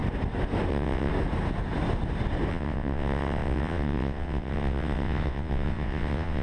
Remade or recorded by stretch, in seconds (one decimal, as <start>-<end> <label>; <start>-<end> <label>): 0.0-0.7 recorded; 0.7-1.1 remade; 1.1-2.5 recorded; 2.5-6.4 remade